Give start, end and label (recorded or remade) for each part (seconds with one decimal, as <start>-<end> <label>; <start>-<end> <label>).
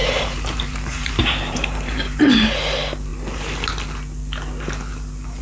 0.0-2.2 remade; 2.2-5.4 recorded